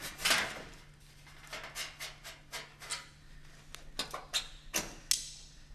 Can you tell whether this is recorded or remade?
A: recorded